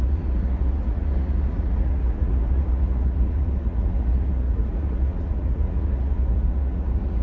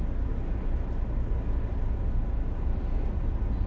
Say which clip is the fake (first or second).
first